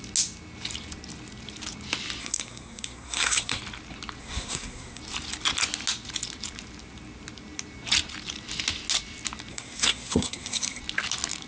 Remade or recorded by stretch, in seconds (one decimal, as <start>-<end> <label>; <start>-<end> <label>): 0.0-2.2 recorded; 2.2-3.6 remade; 3.6-4.2 recorded; 4.2-5.0 remade; 5.0-9.5 recorded; 9.5-10.8 remade; 10.8-11.5 recorded